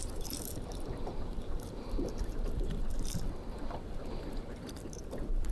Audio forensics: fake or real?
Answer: fake